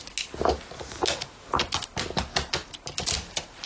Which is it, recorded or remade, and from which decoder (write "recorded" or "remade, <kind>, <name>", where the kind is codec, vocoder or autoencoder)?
recorded